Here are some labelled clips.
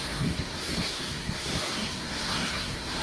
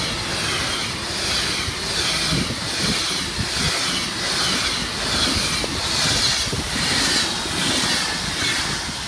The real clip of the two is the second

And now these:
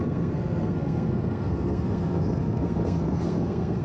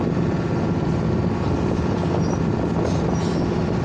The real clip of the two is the second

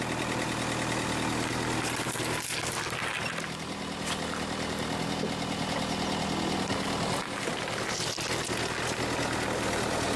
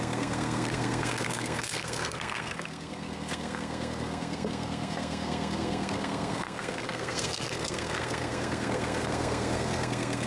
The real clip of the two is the first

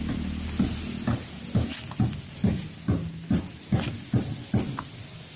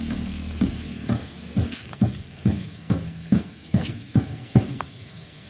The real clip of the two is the first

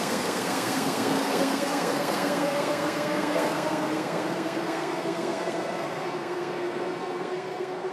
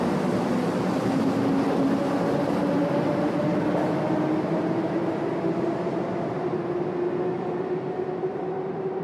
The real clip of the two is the second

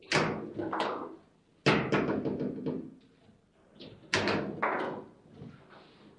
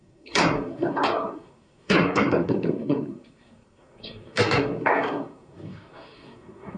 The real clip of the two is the first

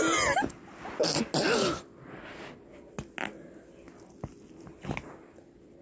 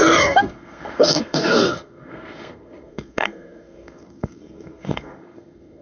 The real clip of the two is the first